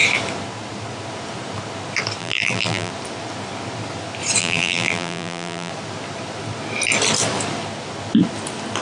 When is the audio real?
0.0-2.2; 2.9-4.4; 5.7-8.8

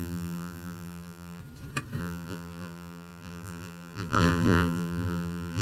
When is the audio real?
1.4-2.0

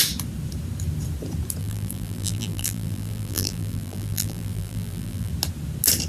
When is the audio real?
0.0-1.6; 5.3-6.1

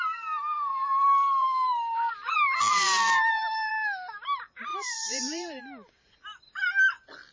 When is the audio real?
0.0-0.7; 3.7-4.7; 5.6-7.3

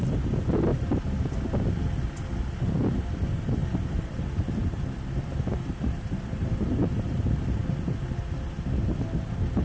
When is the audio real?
0.0-0.7; 1.2-3.6; 7.7-9.6